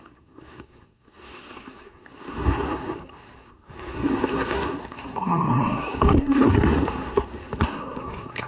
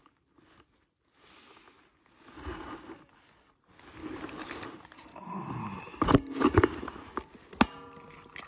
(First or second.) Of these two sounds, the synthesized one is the first